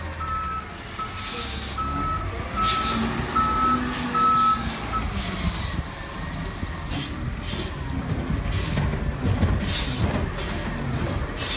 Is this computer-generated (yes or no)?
no